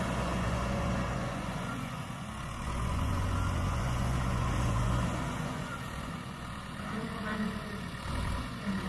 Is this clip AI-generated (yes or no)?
yes